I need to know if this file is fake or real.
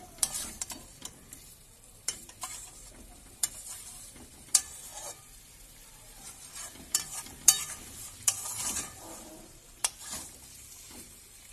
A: fake